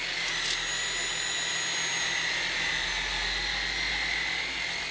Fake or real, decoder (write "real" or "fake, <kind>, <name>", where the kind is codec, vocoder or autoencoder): real